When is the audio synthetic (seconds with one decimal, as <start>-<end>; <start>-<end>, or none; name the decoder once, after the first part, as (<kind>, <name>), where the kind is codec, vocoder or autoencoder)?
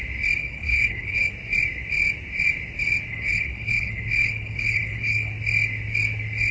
0.4-1.3 (codec, HILCodec); 3.1-5.3